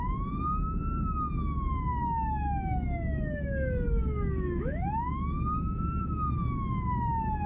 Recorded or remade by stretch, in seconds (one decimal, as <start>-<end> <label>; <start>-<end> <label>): 0.0-2.0 recorded; 2.0-6.3 remade; 6.3-7.5 recorded